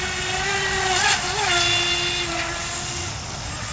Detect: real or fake real